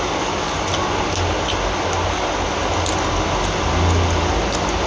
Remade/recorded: recorded